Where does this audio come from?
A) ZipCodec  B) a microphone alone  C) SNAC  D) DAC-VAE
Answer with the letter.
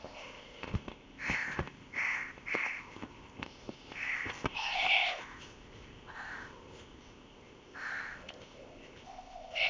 A